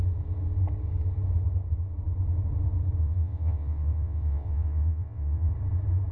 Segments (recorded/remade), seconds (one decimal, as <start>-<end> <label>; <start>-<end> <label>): 0.0-3.0 recorded; 3.0-5.5 remade; 5.5-6.1 recorded